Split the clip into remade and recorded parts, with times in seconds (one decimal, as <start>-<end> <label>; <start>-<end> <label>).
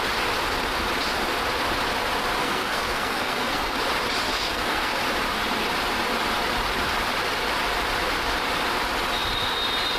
0.0-2.4 recorded; 2.4-3.8 remade; 3.8-4.3 recorded; 4.3-5.0 remade; 5.0-10.0 recorded